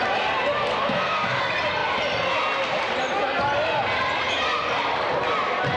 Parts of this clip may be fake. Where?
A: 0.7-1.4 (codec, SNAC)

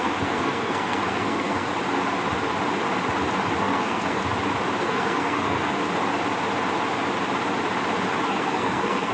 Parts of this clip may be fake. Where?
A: 0.0-1.7 (codec, SNAC); 3.6-4.2; 4.8-5.8; 8.2-9.1

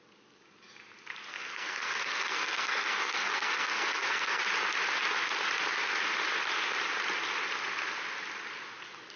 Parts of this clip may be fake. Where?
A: 1.3-4.4 (codec, SNAC)

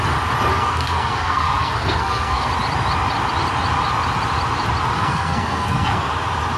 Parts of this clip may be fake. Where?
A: 0.5-2.5 (codec, SNAC); 4.9-6.1

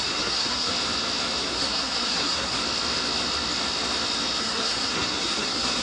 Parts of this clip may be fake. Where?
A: 0.0-0.7 (codec, SNAC); 1.4-2.6; 4.4-5.8

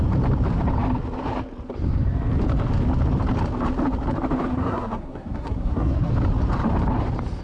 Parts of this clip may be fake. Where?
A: 4.5-6.1 (codec, SNAC)

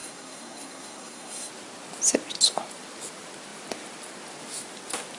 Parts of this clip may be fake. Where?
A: 0.0-1.5 (codec, SNAC)